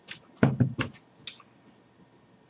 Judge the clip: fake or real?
real